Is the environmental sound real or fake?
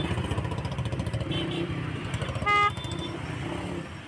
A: real